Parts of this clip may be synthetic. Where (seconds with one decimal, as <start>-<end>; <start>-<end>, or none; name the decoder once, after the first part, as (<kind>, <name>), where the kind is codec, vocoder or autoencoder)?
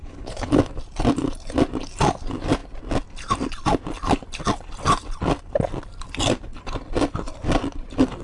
0.0-0.6 (codec, HILCodec)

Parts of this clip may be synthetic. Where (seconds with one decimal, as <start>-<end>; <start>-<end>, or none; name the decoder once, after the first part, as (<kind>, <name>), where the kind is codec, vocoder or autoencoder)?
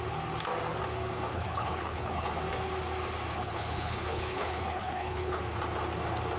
1.3-2.3 (codec, HILCodec); 3.3-5.4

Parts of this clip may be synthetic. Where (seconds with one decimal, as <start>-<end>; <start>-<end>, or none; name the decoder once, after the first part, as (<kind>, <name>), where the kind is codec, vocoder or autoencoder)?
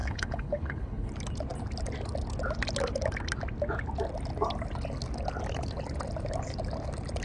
0.0-1.1 (codec, HILCodec)